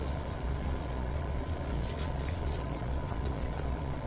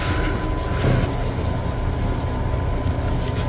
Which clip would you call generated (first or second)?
first